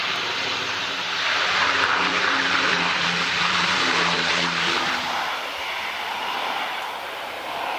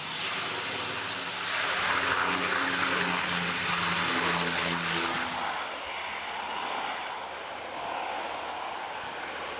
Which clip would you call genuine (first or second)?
second